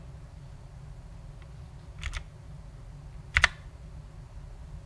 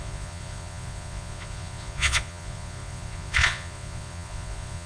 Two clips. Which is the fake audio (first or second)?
second